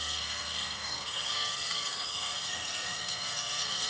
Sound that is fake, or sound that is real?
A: fake